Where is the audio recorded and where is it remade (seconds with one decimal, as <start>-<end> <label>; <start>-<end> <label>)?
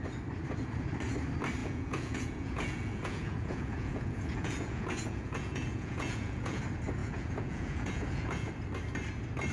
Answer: 0.0-1.6 recorded; 1.6-6.6 remade; 6.6-7.0 recorded; 7.0-8.5 remade; 8.5-9.5 recorded